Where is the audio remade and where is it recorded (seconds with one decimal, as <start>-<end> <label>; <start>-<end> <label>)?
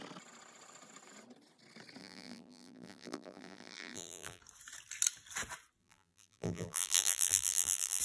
0.0-2.0 recorded; 2.0-4.4 remade; 4.4-5.8 recorded; 5.8-8.0 remade